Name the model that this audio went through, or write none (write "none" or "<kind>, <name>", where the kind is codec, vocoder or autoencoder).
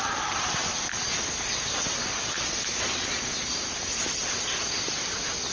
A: none